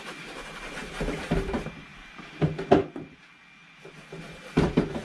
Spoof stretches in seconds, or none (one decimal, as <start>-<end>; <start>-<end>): none